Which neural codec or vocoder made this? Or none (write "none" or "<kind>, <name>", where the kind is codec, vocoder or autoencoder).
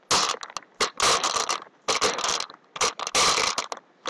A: none